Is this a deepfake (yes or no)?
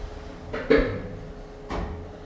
no